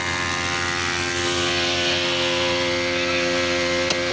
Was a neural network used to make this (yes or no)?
no